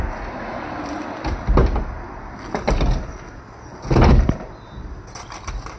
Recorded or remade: recorded